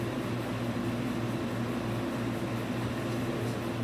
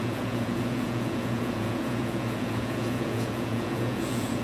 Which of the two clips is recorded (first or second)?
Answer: first